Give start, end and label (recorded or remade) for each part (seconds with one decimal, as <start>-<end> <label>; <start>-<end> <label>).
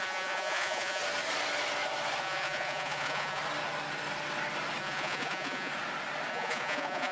0.0-1.0 remade; 1.0-2.2 recorded; 2.2-3.4 remade; 3.4-4.8 recorded; 4.8-5.7 remade; 5.7-6.3 recorded; 6.3-7.1 remade